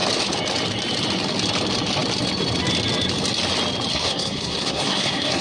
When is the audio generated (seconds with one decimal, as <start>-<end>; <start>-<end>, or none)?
3.9-5.4

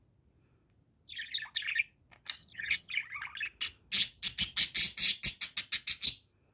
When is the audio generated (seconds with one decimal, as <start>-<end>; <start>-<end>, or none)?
2.4-2.9

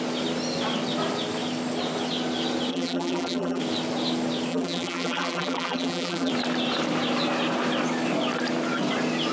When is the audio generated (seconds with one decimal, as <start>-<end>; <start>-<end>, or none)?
2.7-3.6; 4.5-6.3

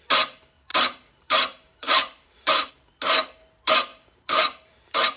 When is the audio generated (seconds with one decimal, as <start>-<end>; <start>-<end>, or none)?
0.7-2.7; 3.9-5.2

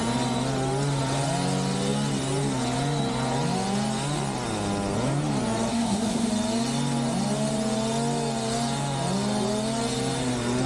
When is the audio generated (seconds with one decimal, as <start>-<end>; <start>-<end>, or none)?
5.7-6.3